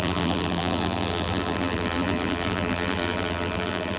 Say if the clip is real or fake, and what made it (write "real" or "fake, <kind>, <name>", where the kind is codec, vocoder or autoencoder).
fake, vocoder, BigVGAN v2